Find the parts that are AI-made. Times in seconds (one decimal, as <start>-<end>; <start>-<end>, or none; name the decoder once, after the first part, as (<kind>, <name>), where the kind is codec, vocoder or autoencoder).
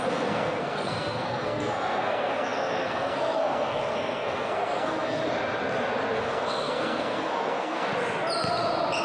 0.0-5.2 (codec, SNAC); 6.2-7.9